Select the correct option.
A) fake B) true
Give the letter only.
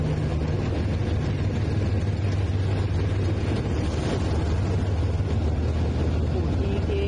B